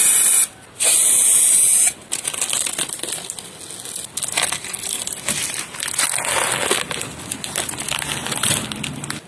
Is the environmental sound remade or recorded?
recorded